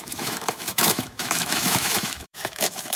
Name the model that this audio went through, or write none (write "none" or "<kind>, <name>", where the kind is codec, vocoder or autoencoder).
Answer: autoencoder, DAC-VAE